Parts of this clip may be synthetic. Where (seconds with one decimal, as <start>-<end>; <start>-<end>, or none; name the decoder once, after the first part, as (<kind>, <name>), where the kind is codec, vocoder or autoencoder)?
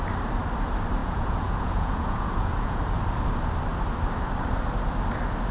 1.0-2.8 (vocoder, Vocos)